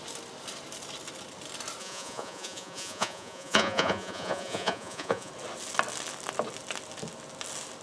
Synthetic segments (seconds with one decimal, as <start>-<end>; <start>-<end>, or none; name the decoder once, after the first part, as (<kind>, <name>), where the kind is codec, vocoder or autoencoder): 1.8-5.3 (vocoder, Vocos)